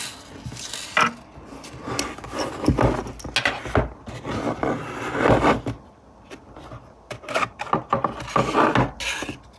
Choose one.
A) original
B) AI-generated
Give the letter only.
A